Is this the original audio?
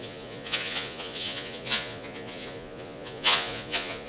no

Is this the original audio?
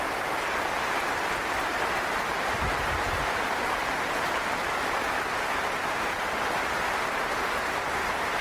no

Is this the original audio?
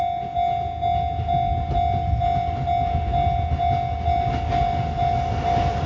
yes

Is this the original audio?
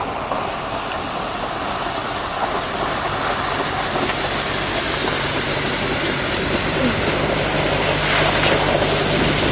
yes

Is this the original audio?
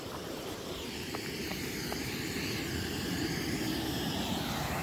yes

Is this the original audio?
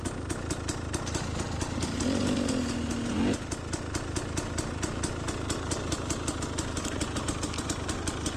yes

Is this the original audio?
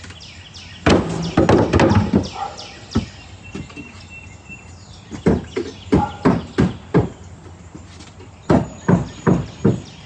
yes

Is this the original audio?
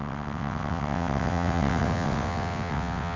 no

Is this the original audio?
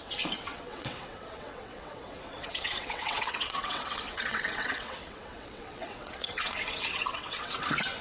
no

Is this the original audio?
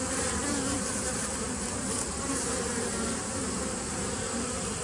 no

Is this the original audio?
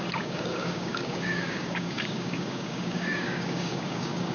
no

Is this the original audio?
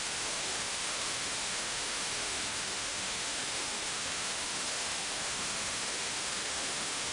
no